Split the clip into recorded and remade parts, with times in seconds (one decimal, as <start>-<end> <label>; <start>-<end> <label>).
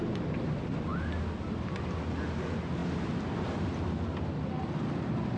0.0-5.4 recorded